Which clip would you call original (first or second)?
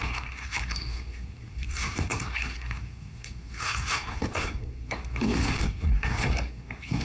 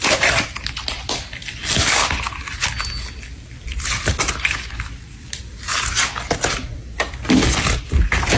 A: second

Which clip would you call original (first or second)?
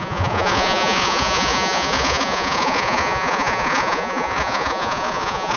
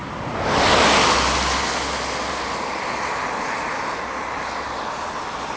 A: second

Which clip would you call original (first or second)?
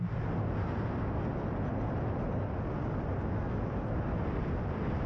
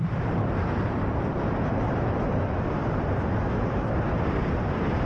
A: first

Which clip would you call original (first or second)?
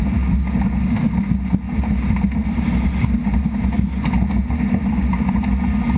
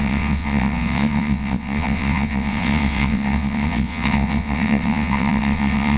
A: first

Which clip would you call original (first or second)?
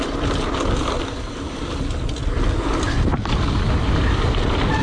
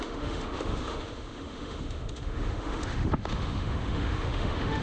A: first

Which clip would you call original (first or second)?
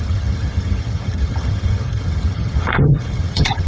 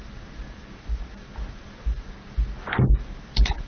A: second